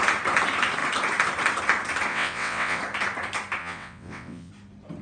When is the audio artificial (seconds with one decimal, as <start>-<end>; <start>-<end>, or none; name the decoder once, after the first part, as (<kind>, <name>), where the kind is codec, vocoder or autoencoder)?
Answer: 2.1-2.8 (vocoder, WaveNeXt); 3.6-4.5